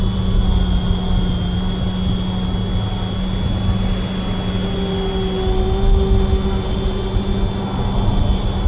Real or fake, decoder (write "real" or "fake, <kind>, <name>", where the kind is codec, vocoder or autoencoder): real